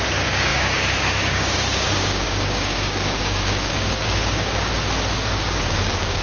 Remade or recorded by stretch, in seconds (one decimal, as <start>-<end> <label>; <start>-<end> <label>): 0.0-4.7 remade; 4.7-5.4 recorded; 5.4-6.2 remade